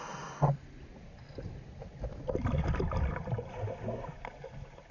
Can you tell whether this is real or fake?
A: real